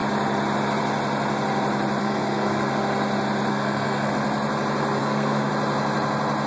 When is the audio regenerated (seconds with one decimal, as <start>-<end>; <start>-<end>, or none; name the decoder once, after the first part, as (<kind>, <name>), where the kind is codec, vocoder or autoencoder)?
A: 2.0-2.7 (codec, SNAC); 3.5-4.1; 5.0-5.5